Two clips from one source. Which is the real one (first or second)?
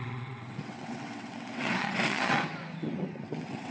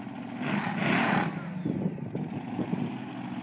second